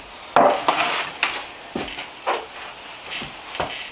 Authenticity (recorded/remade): recorded